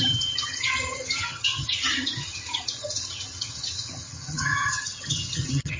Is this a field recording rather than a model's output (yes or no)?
no